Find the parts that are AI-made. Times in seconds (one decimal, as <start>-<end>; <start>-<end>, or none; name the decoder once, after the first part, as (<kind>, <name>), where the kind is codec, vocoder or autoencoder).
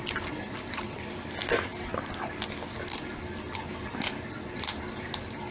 none